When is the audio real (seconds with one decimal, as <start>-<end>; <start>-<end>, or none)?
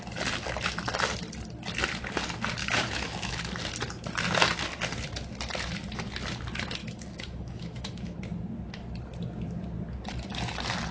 0.0-2.6; 3.3-6.8; 8.1-10.9